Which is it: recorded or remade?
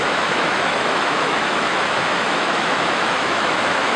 remade